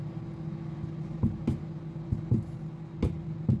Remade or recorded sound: recorded